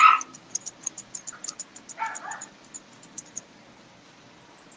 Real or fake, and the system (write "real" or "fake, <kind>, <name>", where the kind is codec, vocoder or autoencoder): real